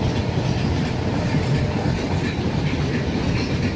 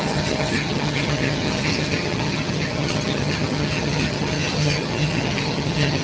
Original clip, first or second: first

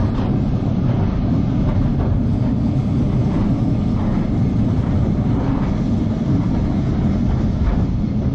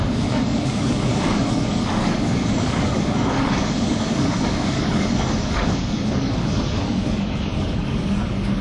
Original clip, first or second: first